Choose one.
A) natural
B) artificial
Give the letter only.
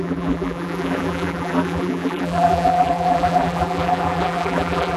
B